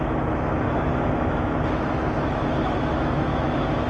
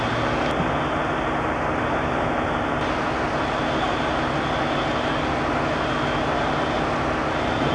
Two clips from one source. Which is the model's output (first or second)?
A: first